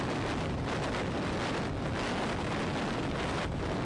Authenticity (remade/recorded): recorded